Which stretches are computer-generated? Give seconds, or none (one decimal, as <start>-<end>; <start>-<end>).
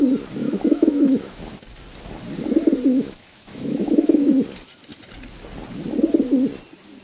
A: 0.4-1.4; 2.9-4.3